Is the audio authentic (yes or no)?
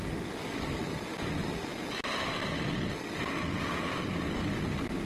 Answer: yes